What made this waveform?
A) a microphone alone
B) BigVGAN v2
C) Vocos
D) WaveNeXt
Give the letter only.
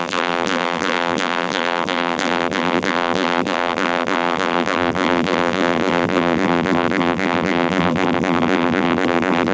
B